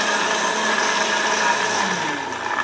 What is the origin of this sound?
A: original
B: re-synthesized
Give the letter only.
A